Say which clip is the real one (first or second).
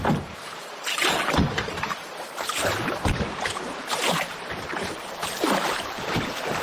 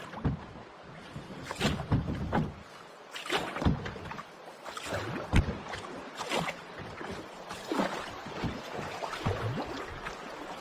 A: second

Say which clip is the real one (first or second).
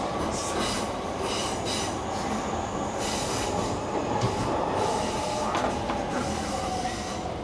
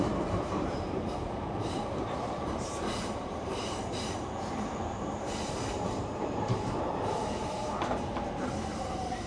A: first